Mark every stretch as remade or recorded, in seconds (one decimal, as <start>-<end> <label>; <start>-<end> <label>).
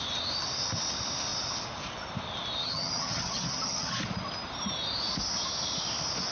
0.0-2.6 recorded; 2.6-4.0 remade; 4.0-6.3 recorded